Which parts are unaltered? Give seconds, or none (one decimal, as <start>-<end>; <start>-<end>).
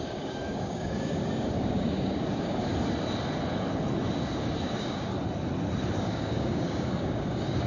2.7-4.6; 5.1-6.0